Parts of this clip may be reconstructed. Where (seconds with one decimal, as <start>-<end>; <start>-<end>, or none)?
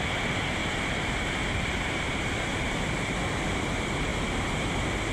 0.6-2.8